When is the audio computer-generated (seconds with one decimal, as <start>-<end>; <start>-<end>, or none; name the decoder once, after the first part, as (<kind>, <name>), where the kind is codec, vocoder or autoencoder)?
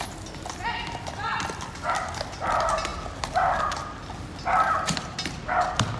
none